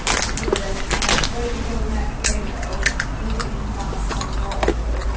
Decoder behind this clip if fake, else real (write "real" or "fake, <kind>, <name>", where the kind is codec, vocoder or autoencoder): real